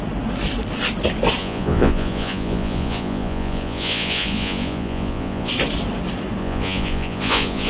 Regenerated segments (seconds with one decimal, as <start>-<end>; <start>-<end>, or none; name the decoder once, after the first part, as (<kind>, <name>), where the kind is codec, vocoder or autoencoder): 1.4-5.5 (vocoder, Vocos); 6.4-7.7